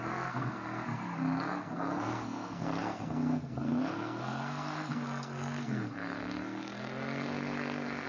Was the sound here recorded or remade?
remade